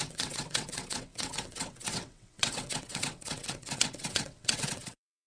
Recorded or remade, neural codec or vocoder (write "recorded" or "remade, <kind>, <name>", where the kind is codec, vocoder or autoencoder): remade, vocoder, WaveNeXt